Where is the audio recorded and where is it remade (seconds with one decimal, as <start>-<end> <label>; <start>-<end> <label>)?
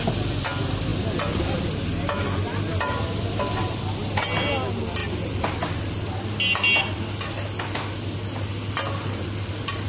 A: 0.0-9.9 recorded